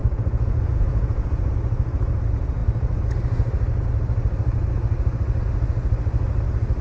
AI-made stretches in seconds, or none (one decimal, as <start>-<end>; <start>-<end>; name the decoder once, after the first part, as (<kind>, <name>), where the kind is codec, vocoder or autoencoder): 0.0-1.5 (vocoder, Vocos)